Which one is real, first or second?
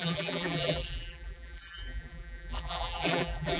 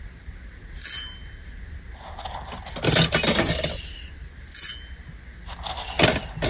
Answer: second